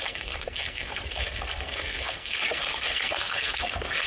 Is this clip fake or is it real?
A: fake